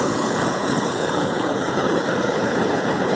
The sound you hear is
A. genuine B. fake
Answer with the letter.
B